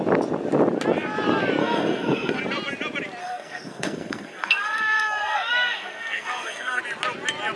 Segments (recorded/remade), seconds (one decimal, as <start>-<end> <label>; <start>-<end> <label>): 0.0-1.6 recorded; 1.6-2.4 remade; 2.4-3.2 recorded; 3.2-6.8 remade; 6.8-7.6 recorded